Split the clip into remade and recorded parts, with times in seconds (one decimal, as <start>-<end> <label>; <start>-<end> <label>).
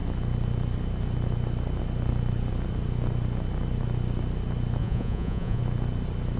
0.0-4.8 recorded; 4.8-5.6 remade; 5.6-6.4 recorded